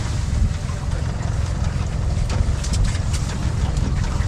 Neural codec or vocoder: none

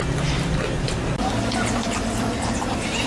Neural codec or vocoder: none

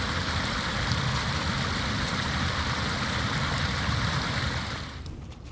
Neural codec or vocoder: vocoder, BigVGAN v2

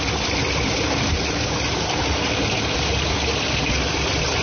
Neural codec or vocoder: none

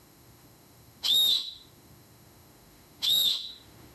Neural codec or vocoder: autoencoder, DAC-VAE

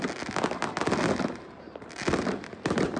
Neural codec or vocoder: none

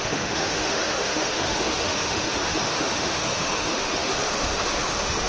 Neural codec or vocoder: autoencoder, DAC-VAE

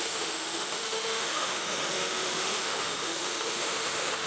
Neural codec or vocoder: autoencoder, DAC-VAE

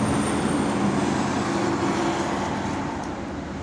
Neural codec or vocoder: none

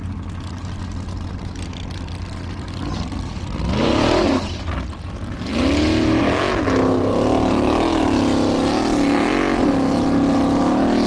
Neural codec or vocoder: none